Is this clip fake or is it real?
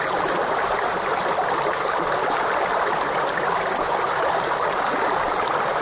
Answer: real